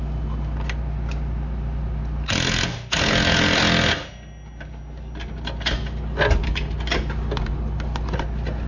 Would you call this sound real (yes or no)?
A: yes